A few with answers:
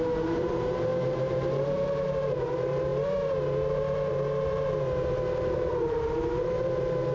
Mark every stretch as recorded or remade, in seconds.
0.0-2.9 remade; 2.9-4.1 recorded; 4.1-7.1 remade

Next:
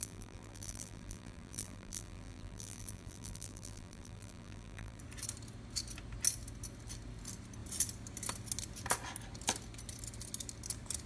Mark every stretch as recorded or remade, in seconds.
0.0-5.0 remade; 5.0-11.1 recorded

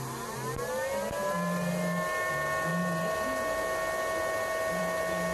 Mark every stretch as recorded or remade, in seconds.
0.0-1.2 recorded; 1.2-2.3 remade; 2.3-5.3 recorded

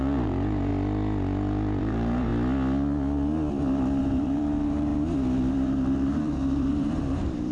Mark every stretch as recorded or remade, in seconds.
0.0-0.7 remade; 0.7-1.8 recorded; 1.8-2.3 remade; 2.3-4.0 recorded; 4.0-4.9 remade; 4.9-5.5 recorded; 5.5-7.5 remade

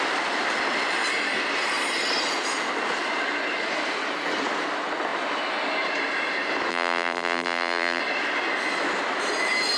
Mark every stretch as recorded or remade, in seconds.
0.0-6.7 recorded; 6.7-8.0 remade; 8.0-9.8 recorded